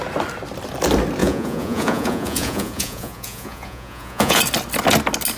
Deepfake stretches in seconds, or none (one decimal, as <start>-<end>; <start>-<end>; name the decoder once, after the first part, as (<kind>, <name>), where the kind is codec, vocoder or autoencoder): 1.2-4.4 (vocoder, Vocos)